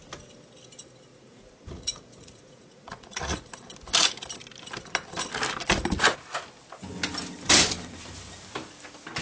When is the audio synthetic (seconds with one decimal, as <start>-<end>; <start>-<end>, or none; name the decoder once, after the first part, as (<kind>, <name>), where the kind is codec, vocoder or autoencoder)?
1.1-3.5 (vocoder, Vocos)